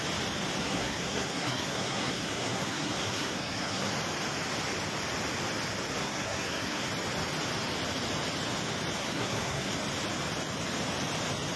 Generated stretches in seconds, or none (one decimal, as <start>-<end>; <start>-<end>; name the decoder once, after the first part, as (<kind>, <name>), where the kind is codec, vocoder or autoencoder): 0.6-3.9 (codec, SNAC); 6.0-6.9; 9.0-9.7